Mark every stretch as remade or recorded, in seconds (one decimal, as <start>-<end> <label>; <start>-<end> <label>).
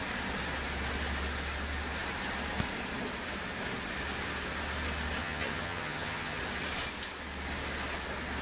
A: 0.0-5.2 recorded; 5.2-6.4 remade; 6.4-8.4 recorded